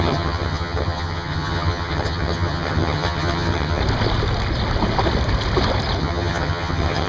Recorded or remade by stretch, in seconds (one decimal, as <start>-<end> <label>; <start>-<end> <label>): 0.0-3.8 remade; 3.8-6.0 recorded; 6.0-7.1 remade

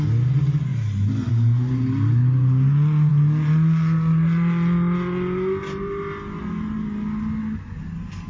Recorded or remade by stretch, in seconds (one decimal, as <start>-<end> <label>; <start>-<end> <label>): 0.0-8.3 recorded

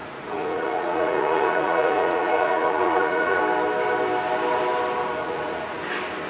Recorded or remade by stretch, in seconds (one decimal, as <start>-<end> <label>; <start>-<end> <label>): 0.0-3.4 remade; 3.4-5.2 recorded; 5.2-5.8 remade; 5.8-6.3 recorded

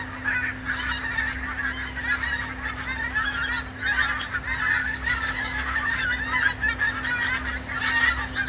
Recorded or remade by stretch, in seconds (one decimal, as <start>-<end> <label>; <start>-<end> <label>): 0.0-4.8 recorded; 4.8-6.0 remade; 6.0-8.5 recorded

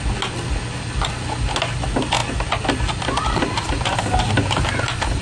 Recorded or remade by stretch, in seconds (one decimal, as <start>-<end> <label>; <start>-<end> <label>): 0.0-5.2 recorded

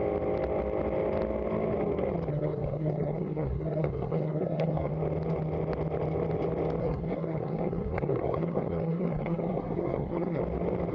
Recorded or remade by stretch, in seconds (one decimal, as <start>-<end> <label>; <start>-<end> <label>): 0.0-2.3 recorded; 2.3-4.9 remade; 4.9-6.8 recorded; 6.8-10.4 remade; 10.4-10.9 recorded